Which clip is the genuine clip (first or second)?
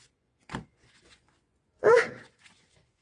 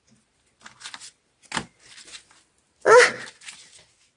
second